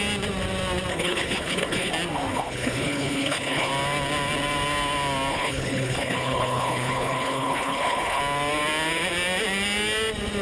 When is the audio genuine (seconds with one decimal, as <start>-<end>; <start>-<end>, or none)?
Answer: 0.0-0.9; 1.9-2.3; 3.7-5.3; 8.2-10.4